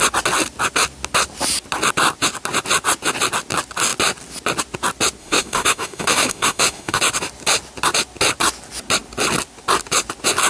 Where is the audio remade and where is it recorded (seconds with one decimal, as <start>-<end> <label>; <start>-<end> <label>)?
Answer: 0.0-5.2 recorded; 5.2-7.0 remade; 7.0-10.5 recorded